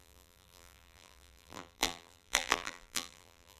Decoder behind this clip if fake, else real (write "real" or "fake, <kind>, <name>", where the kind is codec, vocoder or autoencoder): fake, vocoder, BigVGAN v2